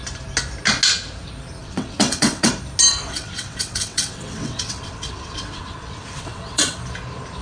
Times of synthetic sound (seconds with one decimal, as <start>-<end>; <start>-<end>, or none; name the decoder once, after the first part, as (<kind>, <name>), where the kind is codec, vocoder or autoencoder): 1.6-2.5 (vocoder, WaveNeXt); 2.9-6.8